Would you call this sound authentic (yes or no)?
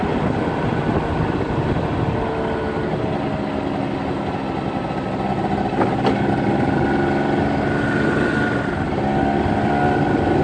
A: yes